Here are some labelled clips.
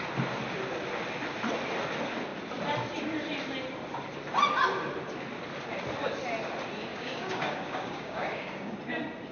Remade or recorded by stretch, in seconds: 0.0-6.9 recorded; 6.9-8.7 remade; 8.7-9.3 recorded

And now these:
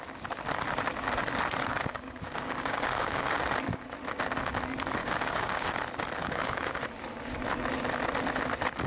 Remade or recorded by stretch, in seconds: 0.0-1.7 recorded; 1.7-3.3 remade; 3.3-5.0 recorded; 5.0-5.7 remade; 5.7-6.2 recorded; 6.2-6.8 remade; 6.8-8.9 recorded

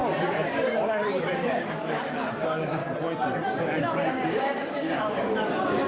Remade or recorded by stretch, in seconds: 0.0-2.8 remade; 2.8-3.6 recorded; 3.6-5.9 remade

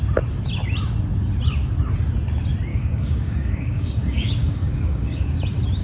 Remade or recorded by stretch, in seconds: 0.0-2.7 recorded; 2.7-5.2 remade; 5.2-5.8 recorded

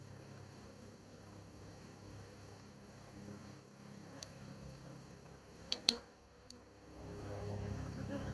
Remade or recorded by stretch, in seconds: 0.0-8.3 remade

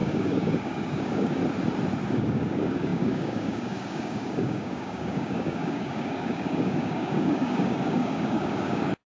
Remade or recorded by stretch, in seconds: 0.0-1.4 remade; 1.4-2.1 recorded; 2.1-9.1 remade

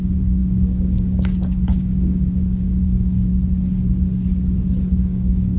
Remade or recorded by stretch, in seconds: 0.0-3.3 remade; 3.3-4.8 recorded; 4.8-5.6 remade